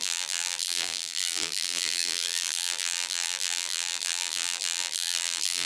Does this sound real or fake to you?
fake